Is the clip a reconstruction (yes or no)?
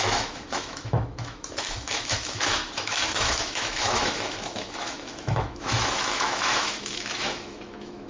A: yes